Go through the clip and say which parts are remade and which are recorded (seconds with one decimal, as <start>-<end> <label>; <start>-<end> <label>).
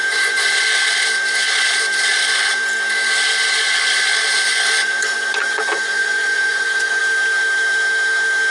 0.0-0.6 remade; 0.6-4.8 recorded; 4.8-7.0 remade; 7.0-8.5 recorded